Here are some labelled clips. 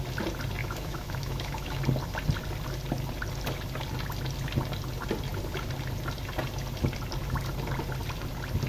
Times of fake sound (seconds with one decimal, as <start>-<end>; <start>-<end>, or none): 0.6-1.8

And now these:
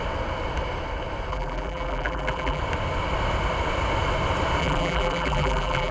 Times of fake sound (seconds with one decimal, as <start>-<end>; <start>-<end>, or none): 1.3-2.6; 4.6-5.9

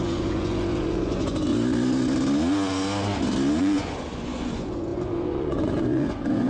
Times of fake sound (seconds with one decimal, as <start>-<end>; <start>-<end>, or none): 0.0-1.5; 3.6-6.5

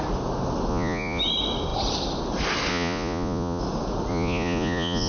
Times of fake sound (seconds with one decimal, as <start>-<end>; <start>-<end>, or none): 0.7-1.2; 2.7-3.6; 4.1-5.1

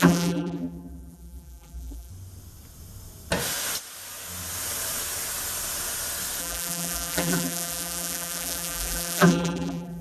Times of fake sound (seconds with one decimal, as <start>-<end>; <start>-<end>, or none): 0.0-2.1; 6.4-10.0

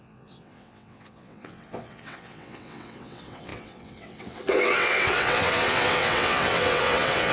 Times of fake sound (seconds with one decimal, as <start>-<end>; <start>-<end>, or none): 0.0-7.3